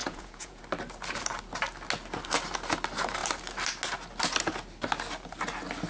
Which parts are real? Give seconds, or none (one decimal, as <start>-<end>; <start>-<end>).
0.6-5.9